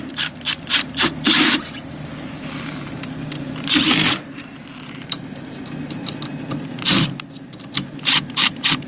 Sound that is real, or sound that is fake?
fake